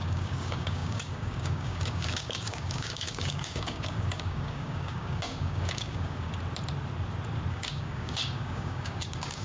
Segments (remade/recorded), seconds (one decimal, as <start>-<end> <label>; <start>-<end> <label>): 0.0-6.3 remade; 6.3-7.5 recorded; 7.5-9.4 remade

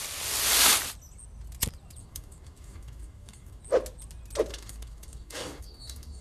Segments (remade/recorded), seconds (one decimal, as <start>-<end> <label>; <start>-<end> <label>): 0.0-2.0 recorded; 2.0-3.6 remade; 3.6-4.5 recorded; 4.5-6.2 remade

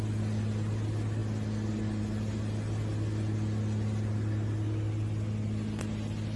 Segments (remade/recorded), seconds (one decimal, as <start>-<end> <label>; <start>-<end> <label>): 0.0-6.4 recorded

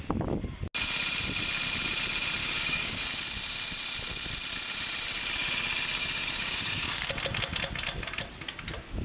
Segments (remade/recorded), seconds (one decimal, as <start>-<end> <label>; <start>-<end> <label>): 0.0-2.4 recorded; 2.4-3.0 remade; 3.0-6.0 recorded; 6.0-7.0 remade; 7.0-9.0 recorded